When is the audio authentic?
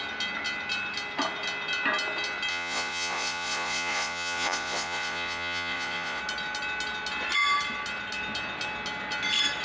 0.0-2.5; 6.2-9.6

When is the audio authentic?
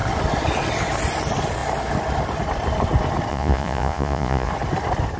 0.0-3.3; 4.5-5.2